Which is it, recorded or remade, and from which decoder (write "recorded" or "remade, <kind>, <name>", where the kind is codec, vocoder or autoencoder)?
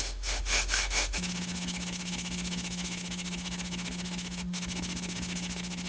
remade, autoencoder, DAC-VAE